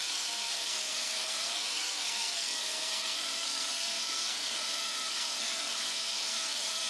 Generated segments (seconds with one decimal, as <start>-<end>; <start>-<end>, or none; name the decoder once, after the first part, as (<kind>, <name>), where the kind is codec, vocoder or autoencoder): 0.0-6.9 (codec, SNAC)